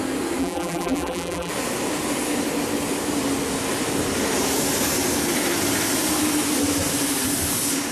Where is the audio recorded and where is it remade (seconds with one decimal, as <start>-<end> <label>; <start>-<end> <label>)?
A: 0.0-0.4 recorded; 0.4-1.5 remade; 1.5-7.9 recorded